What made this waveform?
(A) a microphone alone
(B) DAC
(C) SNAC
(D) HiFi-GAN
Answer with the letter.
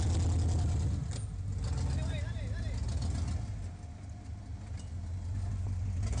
A